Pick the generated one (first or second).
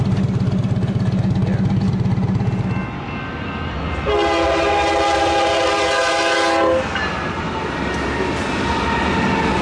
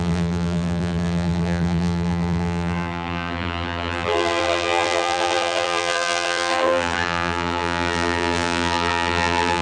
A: second